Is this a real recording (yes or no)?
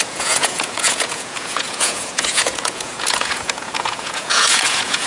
no